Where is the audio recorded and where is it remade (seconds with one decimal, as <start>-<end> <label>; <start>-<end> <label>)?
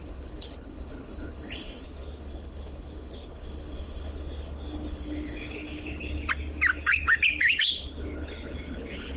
0.0-6.2 remade; 6.2-6.8 recorded; 6.8-9.2 remade